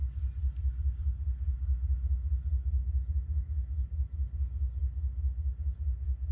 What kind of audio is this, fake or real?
real